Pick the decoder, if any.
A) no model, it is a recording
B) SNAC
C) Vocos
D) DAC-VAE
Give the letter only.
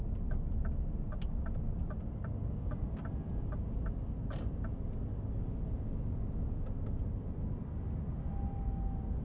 A